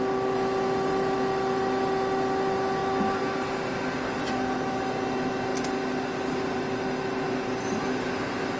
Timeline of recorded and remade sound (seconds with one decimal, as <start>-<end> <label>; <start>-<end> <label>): 0.0-8.6 recorded